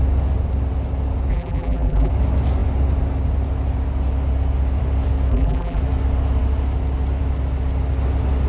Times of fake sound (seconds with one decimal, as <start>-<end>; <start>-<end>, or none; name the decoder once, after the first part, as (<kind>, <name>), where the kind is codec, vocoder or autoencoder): 1.3-2.1 (vocoder, BigVGAN v2); 5.3-5.8